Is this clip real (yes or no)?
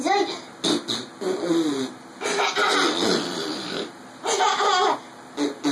yes